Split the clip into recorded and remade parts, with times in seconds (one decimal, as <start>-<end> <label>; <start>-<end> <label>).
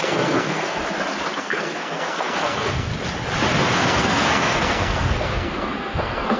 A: 0.0-0.8 remade; 0.8-1.4 recorded; 1.4-2.9 remade; 2.9-3.7 recorded; 3.7-6.4 remade